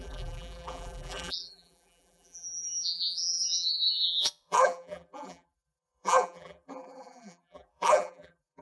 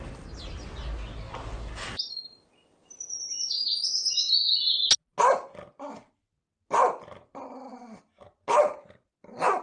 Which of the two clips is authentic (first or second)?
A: second